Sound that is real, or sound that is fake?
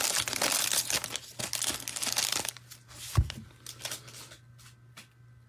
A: real